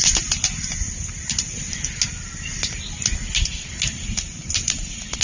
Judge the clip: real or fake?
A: real